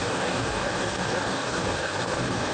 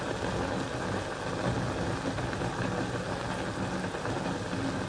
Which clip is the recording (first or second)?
second